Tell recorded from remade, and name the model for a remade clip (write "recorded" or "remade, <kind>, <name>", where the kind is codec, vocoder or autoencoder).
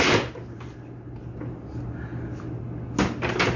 recorded